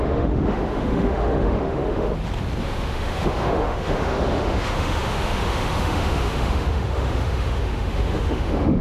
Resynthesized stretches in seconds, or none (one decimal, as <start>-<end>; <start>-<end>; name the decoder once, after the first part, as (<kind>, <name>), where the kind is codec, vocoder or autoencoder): 0.0-2.1 (autoencoder, DAC-VAE); 2.6-8.8